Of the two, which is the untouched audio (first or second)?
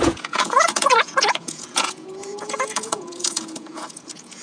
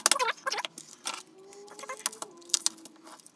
second